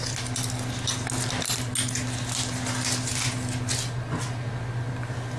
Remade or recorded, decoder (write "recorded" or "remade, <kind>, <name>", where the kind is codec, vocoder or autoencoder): recorded